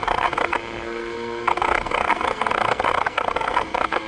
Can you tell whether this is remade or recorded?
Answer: remade